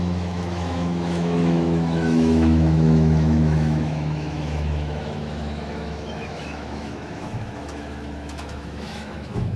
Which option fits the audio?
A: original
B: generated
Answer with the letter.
B